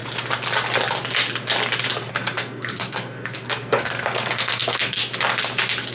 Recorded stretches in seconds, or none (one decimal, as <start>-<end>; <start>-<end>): 0.0-2.1; 5.0-5.9